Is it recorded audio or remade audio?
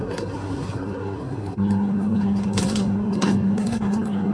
remade